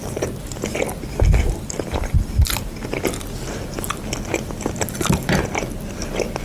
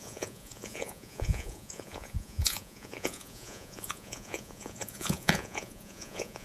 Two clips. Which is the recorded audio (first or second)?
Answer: first